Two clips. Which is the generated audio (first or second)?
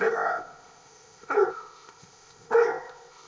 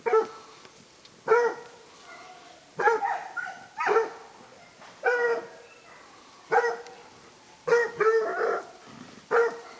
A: first